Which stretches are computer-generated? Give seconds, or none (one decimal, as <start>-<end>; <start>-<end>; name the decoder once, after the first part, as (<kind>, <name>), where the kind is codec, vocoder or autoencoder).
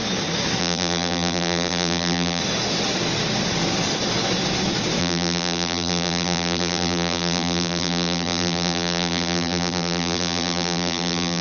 0.6-2.4 (vocoder, BigVGAN v2); 5.0-11.4